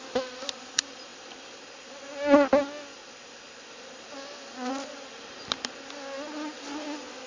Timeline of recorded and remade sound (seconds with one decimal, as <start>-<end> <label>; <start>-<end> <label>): 0.0-7.3 recorded